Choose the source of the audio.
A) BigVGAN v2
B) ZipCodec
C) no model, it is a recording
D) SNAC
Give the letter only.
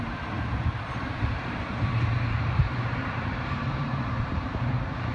A